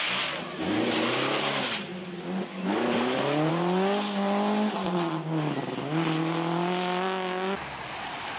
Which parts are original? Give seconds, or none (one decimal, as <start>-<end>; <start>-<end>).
0.0-8.4